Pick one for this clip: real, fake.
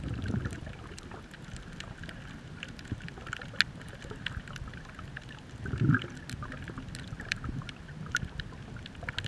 real